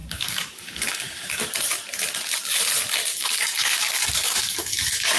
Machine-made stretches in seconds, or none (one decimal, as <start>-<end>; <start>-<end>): 0.0-1.4; 3.1-5.2